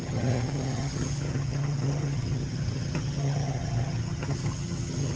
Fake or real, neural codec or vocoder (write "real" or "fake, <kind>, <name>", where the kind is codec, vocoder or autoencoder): fake, vocoder, HiFi-GAN